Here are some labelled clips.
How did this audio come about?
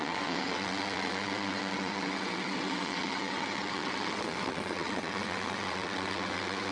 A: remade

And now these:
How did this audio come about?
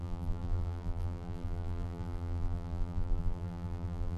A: remade